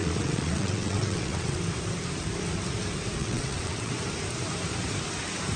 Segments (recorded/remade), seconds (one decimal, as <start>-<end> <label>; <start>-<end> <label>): 0.0-1.6 remade; 1.6-3.2 recorded; 3.2-3.9 remade; 3.9-5.6 recorded